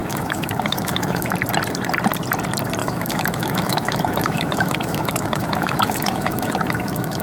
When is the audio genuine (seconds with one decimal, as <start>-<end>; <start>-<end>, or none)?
1.3-2.8

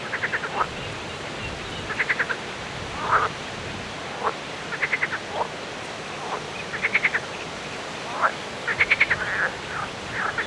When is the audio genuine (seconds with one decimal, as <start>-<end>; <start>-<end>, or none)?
0.0-10.5